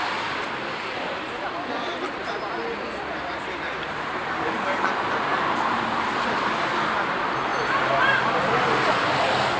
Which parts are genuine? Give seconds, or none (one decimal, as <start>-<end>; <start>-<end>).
7.5-8.9